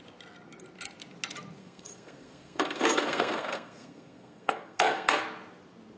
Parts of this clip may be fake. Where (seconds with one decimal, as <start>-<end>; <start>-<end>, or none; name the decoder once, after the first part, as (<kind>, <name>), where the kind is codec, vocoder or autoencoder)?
1.6-5.2 (codec, SNAC)